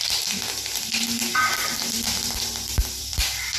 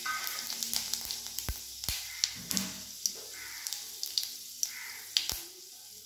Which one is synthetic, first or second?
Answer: first